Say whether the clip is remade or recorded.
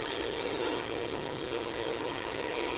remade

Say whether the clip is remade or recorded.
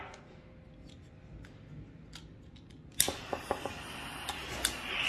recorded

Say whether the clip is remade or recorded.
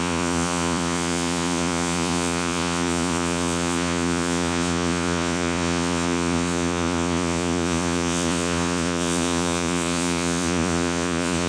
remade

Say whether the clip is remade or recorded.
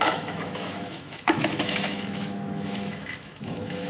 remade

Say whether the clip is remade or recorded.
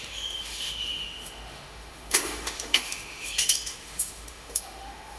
remade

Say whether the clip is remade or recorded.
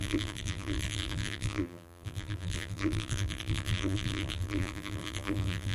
remade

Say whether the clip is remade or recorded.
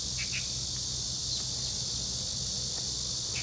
recorded